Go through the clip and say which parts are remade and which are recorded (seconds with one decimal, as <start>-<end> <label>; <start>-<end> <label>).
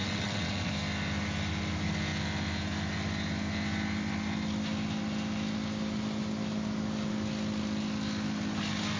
0.0-0.7 remade; 0.7-9.0 recorded